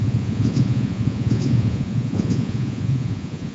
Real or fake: fake